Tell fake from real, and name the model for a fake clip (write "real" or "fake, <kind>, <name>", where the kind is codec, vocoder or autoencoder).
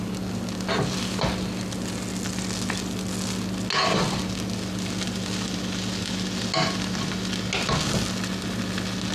real